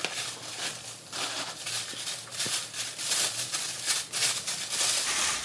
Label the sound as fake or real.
real